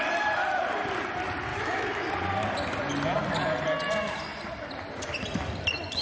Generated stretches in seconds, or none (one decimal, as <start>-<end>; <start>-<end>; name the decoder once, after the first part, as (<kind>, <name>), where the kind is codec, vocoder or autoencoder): 1.5-2.1 (autoencoder, DAC-VAE)